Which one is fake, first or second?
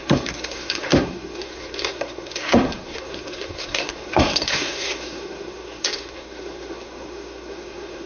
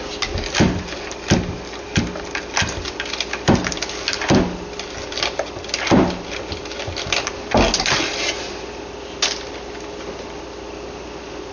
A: first